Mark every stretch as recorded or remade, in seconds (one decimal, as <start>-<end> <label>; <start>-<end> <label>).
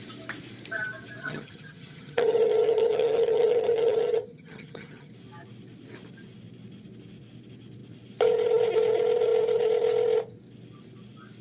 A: 0.0-1.2 recorded; 1.2-5.1 remade; 5.1-11.4 recorded